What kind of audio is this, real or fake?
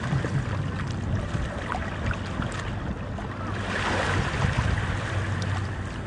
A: real